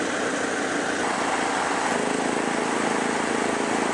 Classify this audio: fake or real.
real